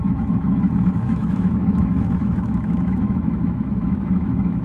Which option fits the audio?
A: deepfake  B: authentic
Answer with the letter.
A